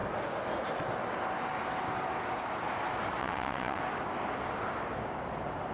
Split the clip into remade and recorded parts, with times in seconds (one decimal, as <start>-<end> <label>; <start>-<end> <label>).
0.0-3.2 recorded; 3.2-3.8 remade; 3.8-5.7 recorded